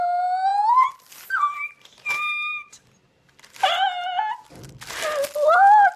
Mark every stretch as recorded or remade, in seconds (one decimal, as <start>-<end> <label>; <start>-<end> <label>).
0.0-6.0 recorded